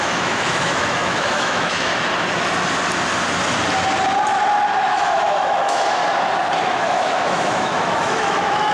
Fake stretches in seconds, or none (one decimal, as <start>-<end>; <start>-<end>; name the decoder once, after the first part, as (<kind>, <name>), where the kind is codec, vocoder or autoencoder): 0.0-1.9 (autoencoder, DAC-VAE); 4.8-6.0; 6.6-8.7

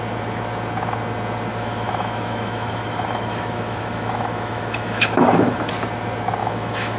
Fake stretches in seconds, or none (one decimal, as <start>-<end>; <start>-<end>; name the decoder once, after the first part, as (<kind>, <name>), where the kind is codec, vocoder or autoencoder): 1.5-5.7 (autoencoder, DAC-VAE); 6.4-7.0

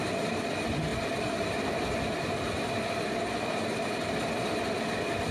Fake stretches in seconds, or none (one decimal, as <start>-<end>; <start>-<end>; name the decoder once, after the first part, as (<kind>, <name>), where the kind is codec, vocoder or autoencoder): none

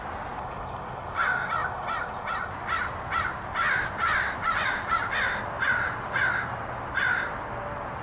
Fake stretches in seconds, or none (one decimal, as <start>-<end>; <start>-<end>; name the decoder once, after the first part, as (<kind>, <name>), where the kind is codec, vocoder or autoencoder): none